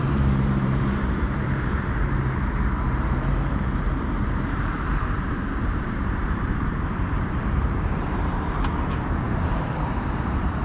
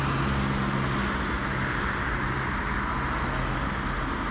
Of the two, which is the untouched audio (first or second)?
second